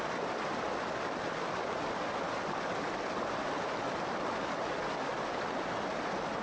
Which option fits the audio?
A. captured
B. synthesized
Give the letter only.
A